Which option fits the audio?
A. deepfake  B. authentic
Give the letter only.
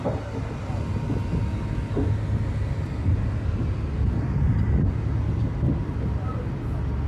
B